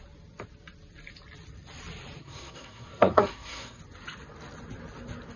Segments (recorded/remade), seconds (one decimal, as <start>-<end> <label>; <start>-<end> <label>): 0.0-2.2 recorded; 2.2-3.8 remade; 3.8-5.4 recorded